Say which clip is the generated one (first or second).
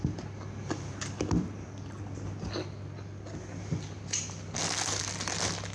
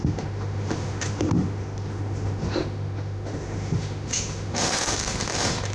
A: second